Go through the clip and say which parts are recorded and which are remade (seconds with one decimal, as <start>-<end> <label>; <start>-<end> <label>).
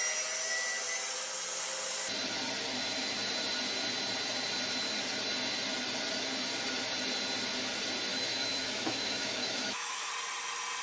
0.0-8.1 recorded; 8.1-10.1 remade; 10.1-10.8 recorded